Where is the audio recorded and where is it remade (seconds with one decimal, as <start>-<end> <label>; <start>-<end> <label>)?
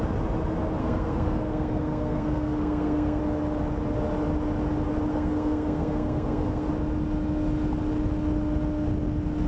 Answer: 0.0-0.8 recorded; 0.8-3.2 remade; 3.2-5.1 recorded; 5.1-6.7 remade; 6.7-9.5 recorded